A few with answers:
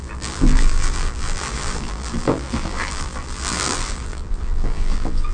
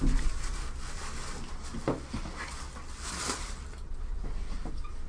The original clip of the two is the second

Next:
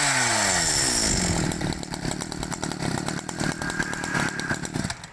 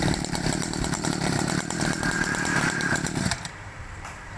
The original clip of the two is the first